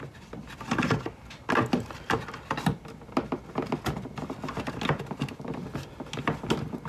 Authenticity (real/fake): real